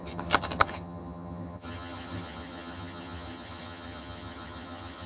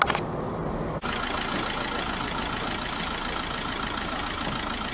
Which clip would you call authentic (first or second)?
second